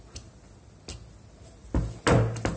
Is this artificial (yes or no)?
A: no